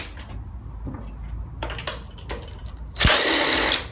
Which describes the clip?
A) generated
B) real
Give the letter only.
B